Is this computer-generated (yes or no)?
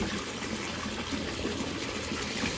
no